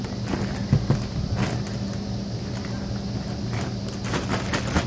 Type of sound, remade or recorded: recorded